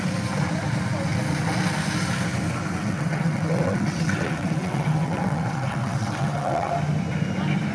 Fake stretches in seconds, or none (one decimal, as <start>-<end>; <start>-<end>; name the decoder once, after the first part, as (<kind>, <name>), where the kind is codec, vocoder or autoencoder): 2.8-6.7 (vocoder, WaveNeXt)